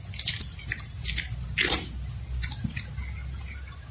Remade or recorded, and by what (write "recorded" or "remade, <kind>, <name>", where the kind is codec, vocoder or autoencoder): recorded